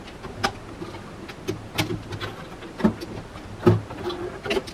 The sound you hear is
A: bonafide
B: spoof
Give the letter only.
A